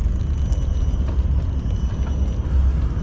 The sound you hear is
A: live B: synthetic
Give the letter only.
A